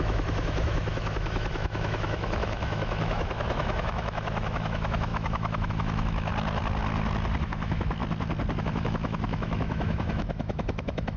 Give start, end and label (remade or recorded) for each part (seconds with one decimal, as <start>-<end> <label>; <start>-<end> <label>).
0.0-6.3 remade; 6.3-7.4 recorded; 7.4-8.0 remade; 8.0-8.6 recorded; 8.6-11.2 remade